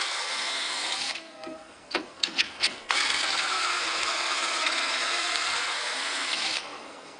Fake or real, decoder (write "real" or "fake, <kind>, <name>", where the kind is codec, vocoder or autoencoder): fake, codec, SNAC